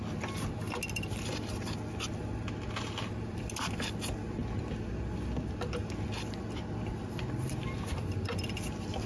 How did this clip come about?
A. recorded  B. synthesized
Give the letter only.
A